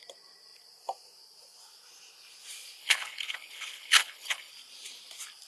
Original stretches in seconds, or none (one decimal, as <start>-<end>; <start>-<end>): 0.0-2.8; 4.5-5.5